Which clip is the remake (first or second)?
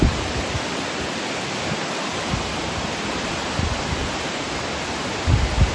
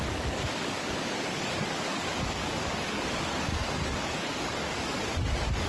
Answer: second